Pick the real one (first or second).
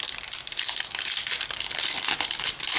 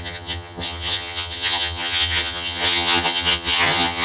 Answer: first